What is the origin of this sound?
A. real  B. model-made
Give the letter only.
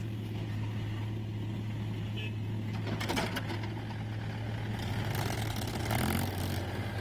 A